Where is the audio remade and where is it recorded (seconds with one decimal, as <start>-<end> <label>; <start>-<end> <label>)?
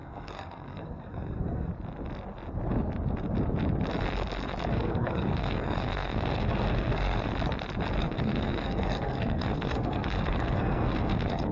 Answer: 0.0-1.7 remade; 1.7-4.7 recorded; 4.7-7.3 remade; 7.3-8.0 recorded; 8.0-11.5 remade